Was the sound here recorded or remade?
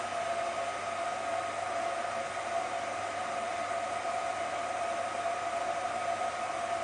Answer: recorded